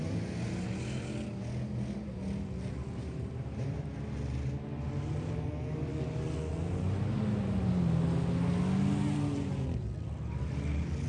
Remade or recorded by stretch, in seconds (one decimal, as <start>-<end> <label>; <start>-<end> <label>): 0.0-3.0 recorded; 3.0-3.8 remade; 3.8-11.1 recorded